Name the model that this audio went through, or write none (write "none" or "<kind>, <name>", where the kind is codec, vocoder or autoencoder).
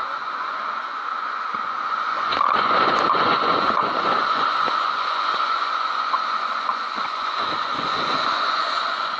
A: vocoder, Vocos